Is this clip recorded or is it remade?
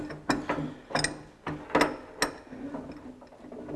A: recorded